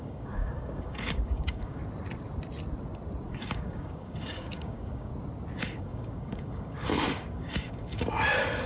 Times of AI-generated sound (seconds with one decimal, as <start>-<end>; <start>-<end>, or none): 0.0-1.8; 3.3-5.1; 5.6-8.7